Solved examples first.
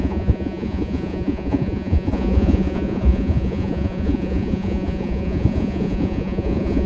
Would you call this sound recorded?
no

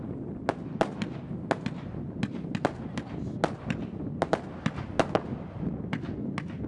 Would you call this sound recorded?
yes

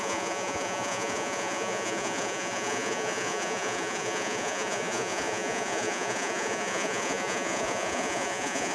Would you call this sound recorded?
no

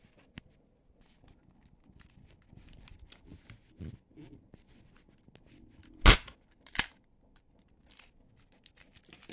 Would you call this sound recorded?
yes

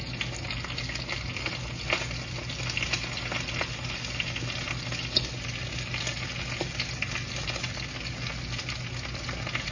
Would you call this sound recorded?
yes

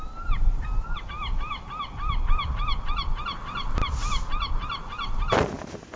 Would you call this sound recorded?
yes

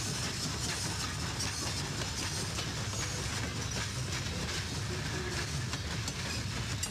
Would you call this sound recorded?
yes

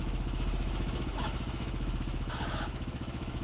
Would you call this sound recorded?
no